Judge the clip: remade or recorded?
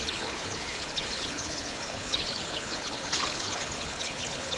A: remade